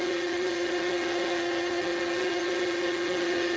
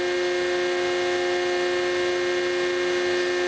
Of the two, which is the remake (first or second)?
first